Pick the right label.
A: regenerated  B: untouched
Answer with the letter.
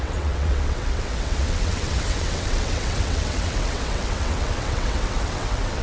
A